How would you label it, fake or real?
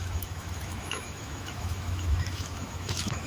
fake